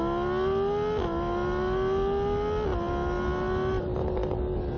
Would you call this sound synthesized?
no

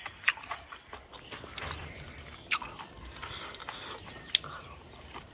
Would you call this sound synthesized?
yes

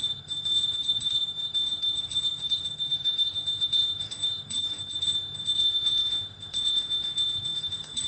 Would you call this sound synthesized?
yes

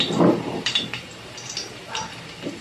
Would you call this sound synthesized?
yes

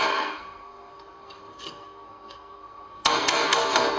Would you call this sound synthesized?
yes